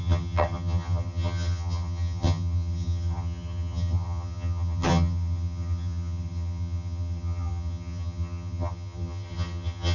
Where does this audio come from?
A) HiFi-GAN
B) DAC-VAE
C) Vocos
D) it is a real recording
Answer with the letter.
A